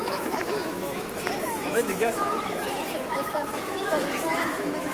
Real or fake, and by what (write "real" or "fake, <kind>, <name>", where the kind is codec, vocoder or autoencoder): fake, autoencoder, DAC-VAE